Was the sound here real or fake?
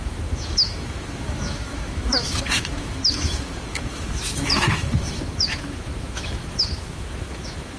fake